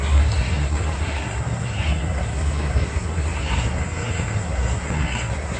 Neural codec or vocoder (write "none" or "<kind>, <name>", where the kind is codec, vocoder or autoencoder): codec, SNAC